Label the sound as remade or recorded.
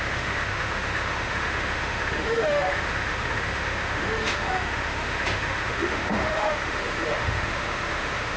remade